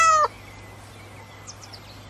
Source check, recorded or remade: remade